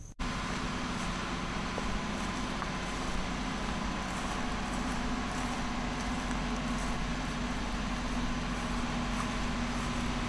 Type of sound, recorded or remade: recorded